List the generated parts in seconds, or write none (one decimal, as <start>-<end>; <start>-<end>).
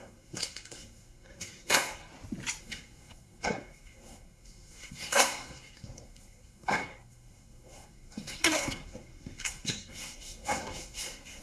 0.0-2.0; 2.6-11.4